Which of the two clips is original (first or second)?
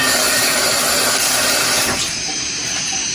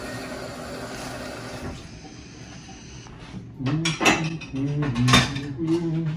second